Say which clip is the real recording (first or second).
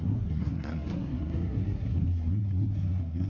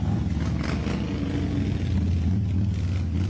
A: second